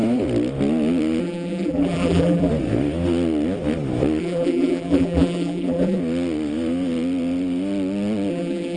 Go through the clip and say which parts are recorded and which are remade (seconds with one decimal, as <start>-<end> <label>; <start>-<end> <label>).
0.0-1.2 recorded; 1.2-2.5 remade; 2.5-4.2 recorded; 4.2-6.0 remade; 6.0-8.3 recorded; 8.3-8.8 remade

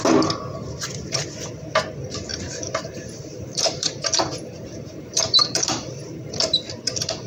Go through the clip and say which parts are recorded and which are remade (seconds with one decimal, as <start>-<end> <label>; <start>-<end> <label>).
0.0-2.3 recorded; 2.3-6.7 remade; 6.7-7.3 recorded

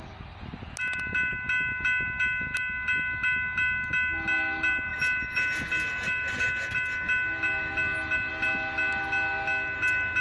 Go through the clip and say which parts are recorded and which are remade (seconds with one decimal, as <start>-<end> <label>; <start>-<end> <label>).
0.0-10.2 recorded

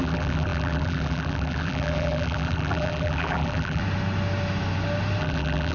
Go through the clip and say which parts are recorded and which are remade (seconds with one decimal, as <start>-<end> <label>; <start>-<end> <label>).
0.0-3.8 remade; 3.8-5.2 recorded; 5.2-5.7 remade

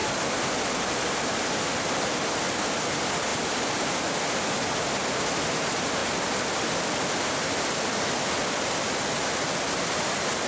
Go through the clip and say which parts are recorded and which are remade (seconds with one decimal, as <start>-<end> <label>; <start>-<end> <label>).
0.0-0.6 recorded; 0.6-6.0 remade; 6.0-6.8 recorded; 6.8-10.5 remade

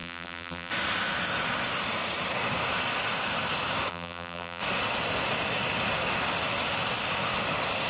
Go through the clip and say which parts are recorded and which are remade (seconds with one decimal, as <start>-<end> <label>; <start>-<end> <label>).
0.0-0.7 remade; 0.7-3.9 recorded; 3.9-4.6 remade; 4.6-7.9 recorded

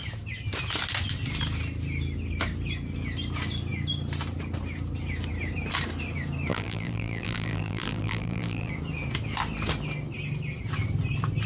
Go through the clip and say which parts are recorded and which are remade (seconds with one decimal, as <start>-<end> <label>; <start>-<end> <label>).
0.0-6.5 recorded; 6.5-8.7 remade; 8.7-11.5 recorded

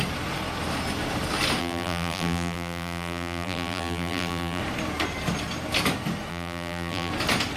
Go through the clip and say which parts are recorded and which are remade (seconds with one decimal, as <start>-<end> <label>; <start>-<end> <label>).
0.0-1.6 recorded; 1.6-4.6 remade; 4.6-6.3 recorded; 6.3-7.1 remade; 7.1-7.6 recorded